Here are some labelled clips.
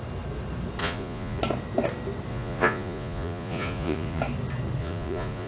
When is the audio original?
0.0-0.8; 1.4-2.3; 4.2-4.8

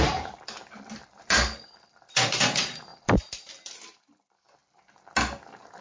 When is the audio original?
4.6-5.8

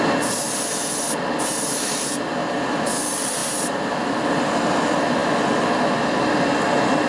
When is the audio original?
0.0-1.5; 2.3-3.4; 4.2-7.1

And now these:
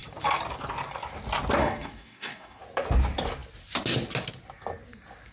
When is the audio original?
0.0-1.6; 2.6-5.3

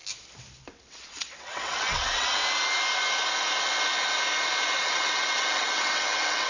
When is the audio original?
0.0-0.7; 2.4-4.8

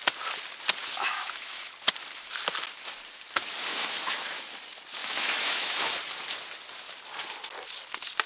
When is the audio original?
0.0-0.8; 1.7-3.7; 4.4-5.0; 5.9-8.3

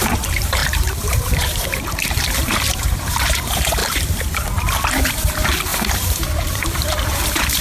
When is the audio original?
3.8-5.1